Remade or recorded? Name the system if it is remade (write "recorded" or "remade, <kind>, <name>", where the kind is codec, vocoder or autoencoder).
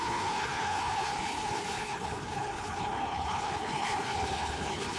remade, codec, HILCodec